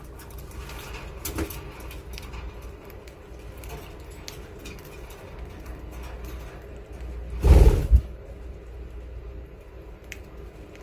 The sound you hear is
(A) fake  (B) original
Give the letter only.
B